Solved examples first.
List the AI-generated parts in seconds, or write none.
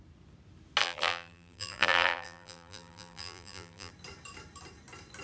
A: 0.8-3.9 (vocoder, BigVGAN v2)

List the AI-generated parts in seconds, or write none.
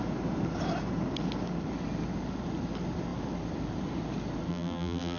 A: 4.5-5.2 (vocoder, BigVGAN v2)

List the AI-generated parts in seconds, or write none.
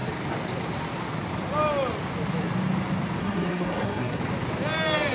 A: 3.2-4.2 (codec, SNAC)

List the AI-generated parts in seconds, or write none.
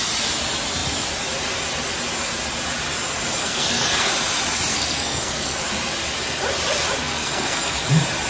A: 3.4-4.1 (codec, SNAC); 4.7-5.6; 7.0-7.9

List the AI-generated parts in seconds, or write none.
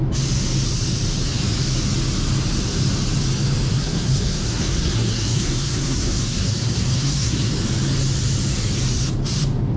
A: 3.7-7.5 (codec, SNAC)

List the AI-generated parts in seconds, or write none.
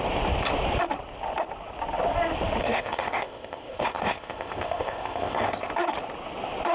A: 2.6-5.7 (codec, ZipCodec)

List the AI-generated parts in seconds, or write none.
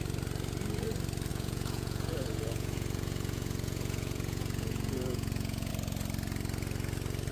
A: 1.3-5.7 (vocoder, Vocos)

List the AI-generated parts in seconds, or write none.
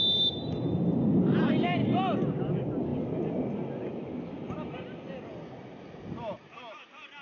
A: none